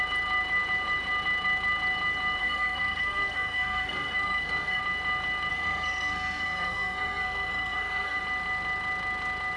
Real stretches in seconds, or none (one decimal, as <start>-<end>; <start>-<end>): 0.0-2.4; 4.8-5.5; 8.2-9.6